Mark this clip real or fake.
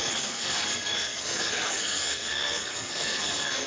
fake